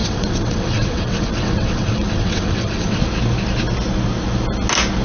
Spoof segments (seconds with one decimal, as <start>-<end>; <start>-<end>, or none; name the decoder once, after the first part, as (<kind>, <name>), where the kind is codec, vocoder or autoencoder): 0.0-3.0 (vocoder, WaveNeXt)